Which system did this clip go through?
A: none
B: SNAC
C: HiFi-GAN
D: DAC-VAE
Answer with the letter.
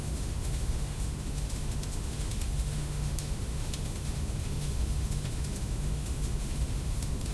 D